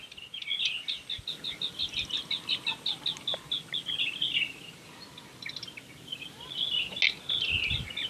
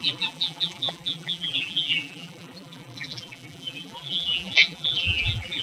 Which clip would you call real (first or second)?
first